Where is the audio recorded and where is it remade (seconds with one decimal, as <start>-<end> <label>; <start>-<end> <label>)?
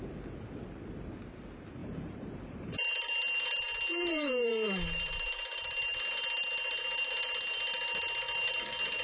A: 0.0-1.8 recorded; 1.8-2.9 remade; 2.9-4.1 recorded; 4.1-5.8 remade; 5.8-9.0 recorded